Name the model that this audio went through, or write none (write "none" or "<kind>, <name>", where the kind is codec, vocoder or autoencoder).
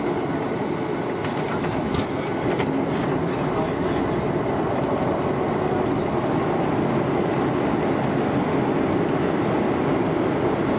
none